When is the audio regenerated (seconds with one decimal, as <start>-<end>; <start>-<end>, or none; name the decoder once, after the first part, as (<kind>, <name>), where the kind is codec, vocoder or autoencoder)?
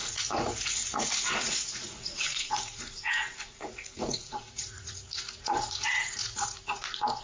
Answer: 0.0-7.2 (vocoder, Vocos)